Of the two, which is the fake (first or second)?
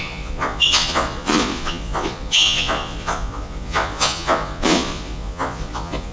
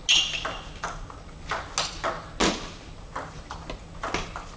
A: first